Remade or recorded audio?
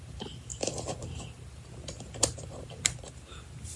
remade